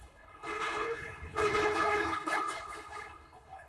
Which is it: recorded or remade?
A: remade